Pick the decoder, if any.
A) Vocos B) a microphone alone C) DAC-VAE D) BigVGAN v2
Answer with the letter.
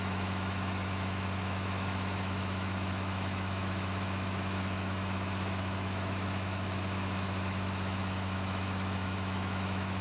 C